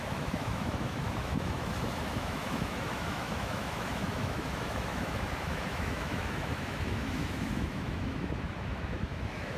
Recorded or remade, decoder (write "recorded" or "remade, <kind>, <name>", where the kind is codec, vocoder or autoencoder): remade, autoencoder, DAC-VAE